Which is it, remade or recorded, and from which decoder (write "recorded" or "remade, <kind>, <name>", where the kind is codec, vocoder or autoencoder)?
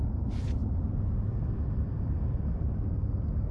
recorded